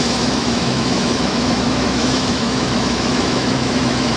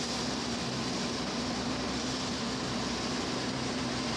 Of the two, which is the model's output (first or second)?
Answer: first